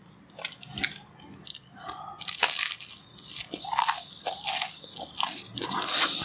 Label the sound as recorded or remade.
recorded